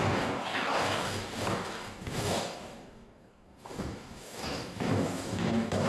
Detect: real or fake fake